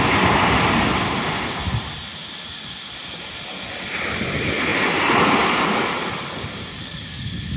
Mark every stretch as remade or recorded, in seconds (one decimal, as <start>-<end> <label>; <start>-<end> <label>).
0.0-6.7 recorded; 6.7-7.6 remade